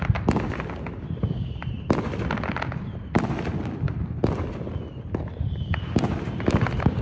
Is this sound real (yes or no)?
yes